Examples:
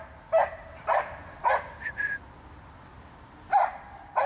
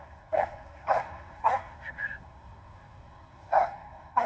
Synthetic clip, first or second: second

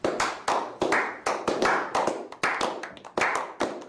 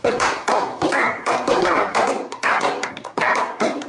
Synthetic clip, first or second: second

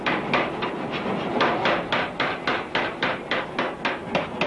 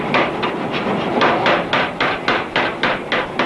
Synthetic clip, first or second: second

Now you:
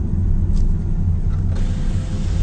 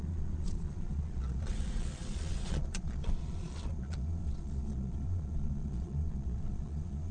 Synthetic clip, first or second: second